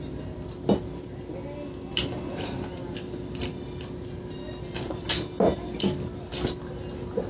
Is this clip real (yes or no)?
yes